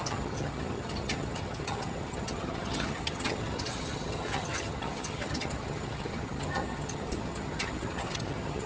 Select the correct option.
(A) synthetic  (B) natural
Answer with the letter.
A